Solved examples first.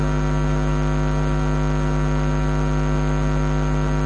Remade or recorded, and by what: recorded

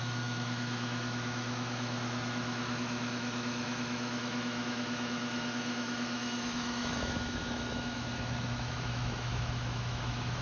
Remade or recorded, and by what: remade, autoencoder, DAC-VAE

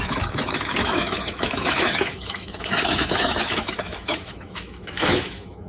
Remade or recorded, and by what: remade, autoencoder, DAC-VAE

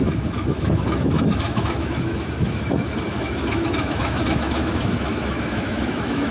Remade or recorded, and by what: remade, autoencoder, DAC-VAE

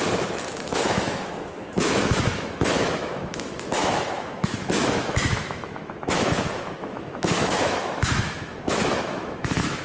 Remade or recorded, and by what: remade, autoencoder, DAC-VAE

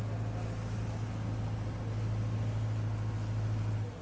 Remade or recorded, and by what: recorded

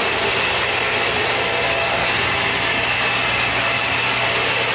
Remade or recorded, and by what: recorded